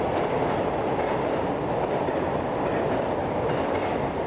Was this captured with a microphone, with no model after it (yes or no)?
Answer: yes